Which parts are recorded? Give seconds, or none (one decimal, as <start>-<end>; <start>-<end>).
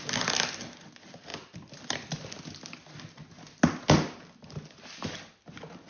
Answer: 0.0-5.9